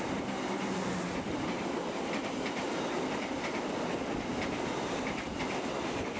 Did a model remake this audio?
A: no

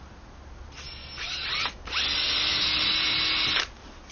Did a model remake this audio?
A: no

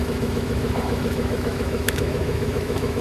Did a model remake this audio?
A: yes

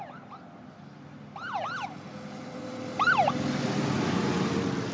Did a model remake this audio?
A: no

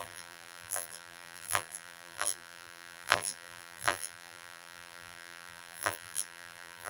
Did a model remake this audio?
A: yes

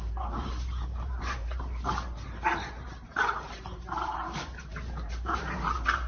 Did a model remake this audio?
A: yes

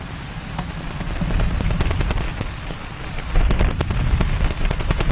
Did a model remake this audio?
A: no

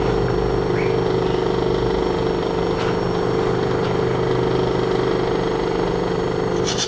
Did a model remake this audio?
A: no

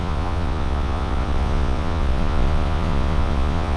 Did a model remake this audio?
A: yes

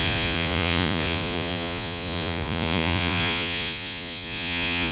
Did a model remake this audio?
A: yes